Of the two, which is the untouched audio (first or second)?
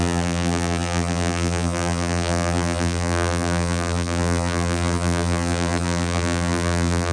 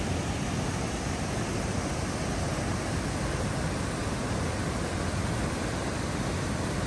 second